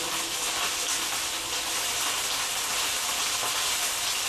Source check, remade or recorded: recorded